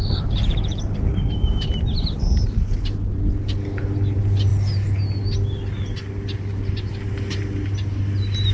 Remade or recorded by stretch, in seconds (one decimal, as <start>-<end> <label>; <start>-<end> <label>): 0.0-8.5 recorded